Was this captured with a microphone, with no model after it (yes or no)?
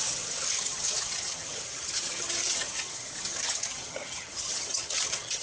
no